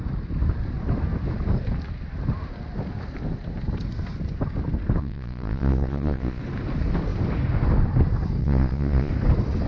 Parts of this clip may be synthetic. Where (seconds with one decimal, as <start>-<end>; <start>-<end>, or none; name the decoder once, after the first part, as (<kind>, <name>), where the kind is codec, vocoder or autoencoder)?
5.0-6.4 (vocoder, Vocos); 8.4-9.1